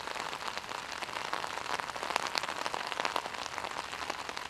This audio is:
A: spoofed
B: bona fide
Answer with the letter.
B